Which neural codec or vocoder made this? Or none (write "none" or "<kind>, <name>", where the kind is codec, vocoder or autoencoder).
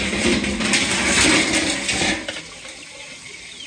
none